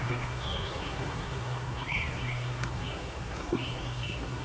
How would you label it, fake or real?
fake